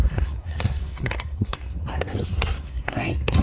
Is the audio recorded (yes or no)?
no